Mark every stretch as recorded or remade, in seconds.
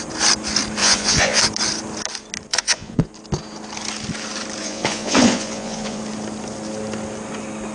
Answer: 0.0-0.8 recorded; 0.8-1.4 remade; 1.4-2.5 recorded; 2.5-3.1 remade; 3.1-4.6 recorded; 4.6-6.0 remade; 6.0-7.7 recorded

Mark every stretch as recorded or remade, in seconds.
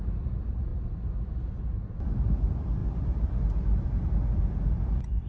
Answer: 0.0-5.3 recorded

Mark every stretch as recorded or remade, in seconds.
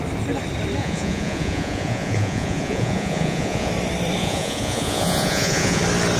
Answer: 0.0-0.8 recorded; 0.8-3.7 remade; 3.7-4.2 recorded; 4.2-5.8 remade; 5.8-6.2 recorded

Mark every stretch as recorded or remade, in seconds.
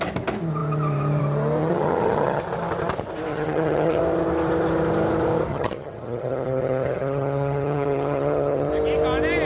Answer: 0.0-1.6 recorded; 1.6-2.4 remade; 2.4-3.3 recorded; 3.3-4.0 remade; 4.0-5.5 recorded; 5.5-8.7 remade; 8.7-9.4 recorded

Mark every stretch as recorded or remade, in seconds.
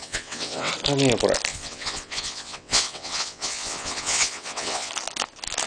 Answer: 0.0-0.7 remade; 0.7-1.5 recorded; 1.5-4.9 remade; 4.9-5.7 recorded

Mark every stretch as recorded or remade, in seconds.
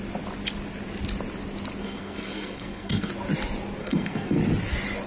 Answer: 0.0-1.8 recorded; 1.8-3.1 remade; 3.1-3.8 recorded; 3.8-4.4 remade; 4.4-5.1 recorded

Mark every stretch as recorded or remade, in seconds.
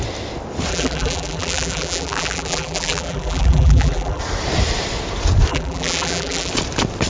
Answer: 0.0-0.7 recorded; 0.7-4.2 remade; 4.2-5.5 recorded; 5.5-6.5 remade; 6.5-7.1 recorded